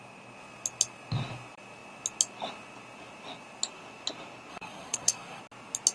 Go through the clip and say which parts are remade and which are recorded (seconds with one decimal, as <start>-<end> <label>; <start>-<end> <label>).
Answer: 0.0-4.5 recorded; 4.5-5.4 remade; 5.4-5.9 recorded